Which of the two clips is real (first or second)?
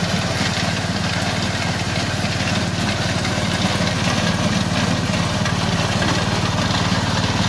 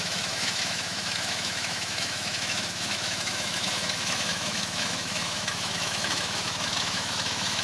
first